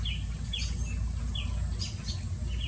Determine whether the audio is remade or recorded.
recorded